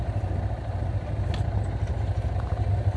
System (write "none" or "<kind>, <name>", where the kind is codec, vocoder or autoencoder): none